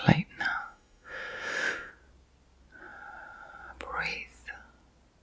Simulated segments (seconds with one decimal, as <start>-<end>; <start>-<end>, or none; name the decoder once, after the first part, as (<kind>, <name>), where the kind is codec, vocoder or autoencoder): 0.6-1.9 (autoencoder, DAC-VAE)